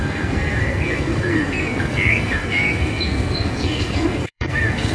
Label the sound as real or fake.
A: fake